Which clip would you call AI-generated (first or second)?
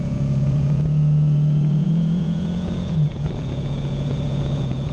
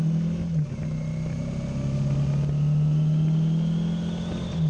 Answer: first